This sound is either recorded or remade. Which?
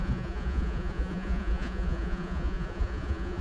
remade